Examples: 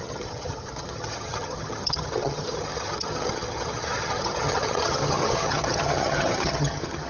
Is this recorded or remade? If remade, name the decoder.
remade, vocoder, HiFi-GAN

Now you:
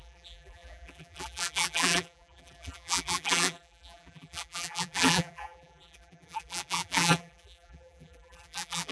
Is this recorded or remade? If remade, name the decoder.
remade, vocoder, BigVGAN v2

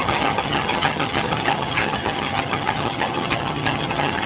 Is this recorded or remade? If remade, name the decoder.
remade, vocoder, HiFi-GAN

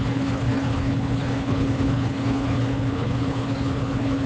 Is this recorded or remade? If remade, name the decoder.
remade, codec, HILCodec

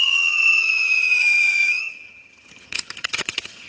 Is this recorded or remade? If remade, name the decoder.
remade, vocoder, HiFi-GAN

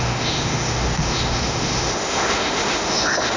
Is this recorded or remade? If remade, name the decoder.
remade, autoencoder, DAC-VAE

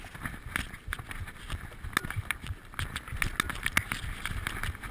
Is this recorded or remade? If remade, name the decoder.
recorded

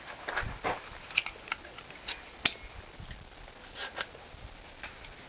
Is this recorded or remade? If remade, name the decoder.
recorded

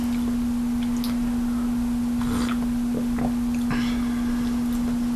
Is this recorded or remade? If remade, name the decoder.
recorded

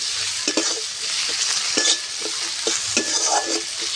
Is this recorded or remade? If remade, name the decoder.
recorded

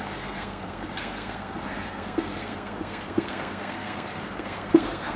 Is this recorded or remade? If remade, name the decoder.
remade, codec, SNAC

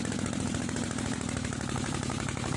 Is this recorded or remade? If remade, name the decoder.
remade, vocoder, BigVGAN v2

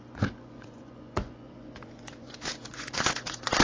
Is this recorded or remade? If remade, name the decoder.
remade, vocoder, Vocos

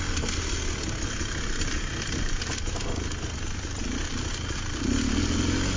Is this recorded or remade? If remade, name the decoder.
recorded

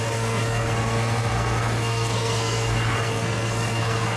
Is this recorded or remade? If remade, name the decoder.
remade, codec, SNAC